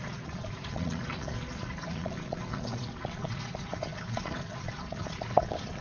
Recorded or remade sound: remade